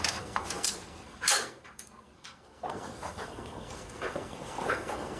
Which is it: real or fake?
fake